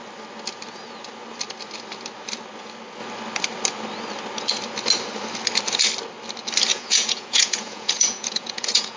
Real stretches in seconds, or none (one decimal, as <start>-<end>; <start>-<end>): 0.0-6.7